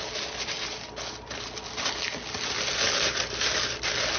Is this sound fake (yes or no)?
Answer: no